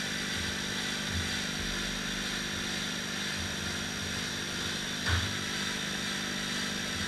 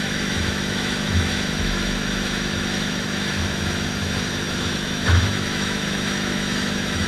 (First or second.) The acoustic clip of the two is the first